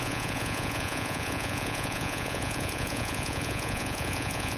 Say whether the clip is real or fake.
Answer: fake